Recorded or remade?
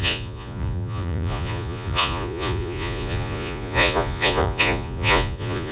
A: remade